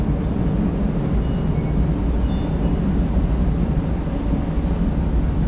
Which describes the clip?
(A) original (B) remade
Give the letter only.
A